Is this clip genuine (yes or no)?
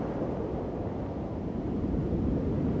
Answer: yes